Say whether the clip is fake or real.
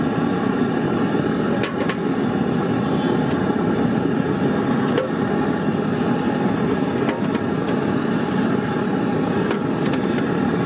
real